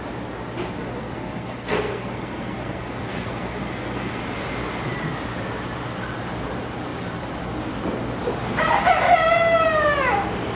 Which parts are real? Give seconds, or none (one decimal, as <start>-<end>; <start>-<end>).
0.0-1.0; 4.2-10.6